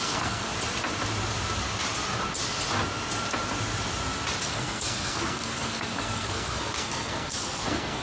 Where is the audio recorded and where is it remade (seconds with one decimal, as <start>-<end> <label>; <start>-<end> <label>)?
0.0-0.5 remade; 0.5-4.4 recorded; 4.4-8.0 remade